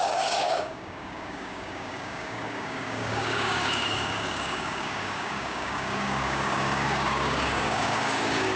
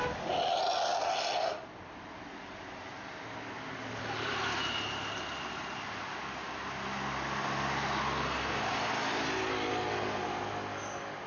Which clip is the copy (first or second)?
first